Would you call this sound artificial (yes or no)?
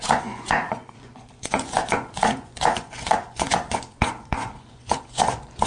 yes